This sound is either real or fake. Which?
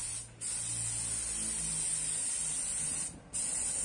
real